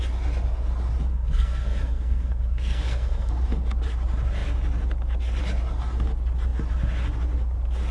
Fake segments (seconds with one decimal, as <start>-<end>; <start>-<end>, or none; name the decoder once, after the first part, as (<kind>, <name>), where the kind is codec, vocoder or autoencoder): 1.1-3.3 (codec, SNAC)